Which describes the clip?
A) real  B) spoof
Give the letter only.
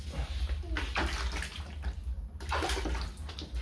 A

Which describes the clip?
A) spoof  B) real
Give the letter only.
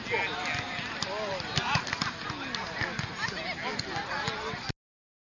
B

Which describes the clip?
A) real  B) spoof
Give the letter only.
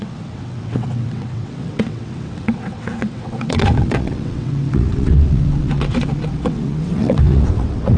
B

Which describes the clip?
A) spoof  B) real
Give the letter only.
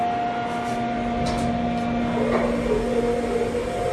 B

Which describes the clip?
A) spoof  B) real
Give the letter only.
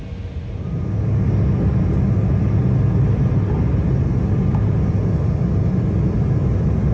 B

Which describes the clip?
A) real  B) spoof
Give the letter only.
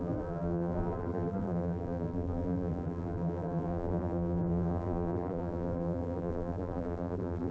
B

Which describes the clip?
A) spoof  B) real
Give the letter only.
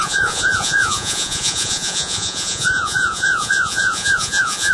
A